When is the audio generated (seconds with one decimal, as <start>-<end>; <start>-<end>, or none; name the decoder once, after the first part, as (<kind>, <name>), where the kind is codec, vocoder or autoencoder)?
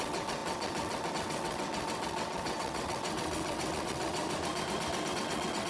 0.0-4.2 (vocoder, WaveNeXt); 5.1-5.7